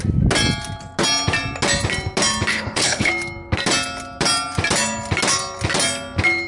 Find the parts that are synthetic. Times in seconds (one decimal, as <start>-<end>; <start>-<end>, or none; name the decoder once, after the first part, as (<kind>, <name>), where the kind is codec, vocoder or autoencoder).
2.5-3.1 (codec, HILCodec)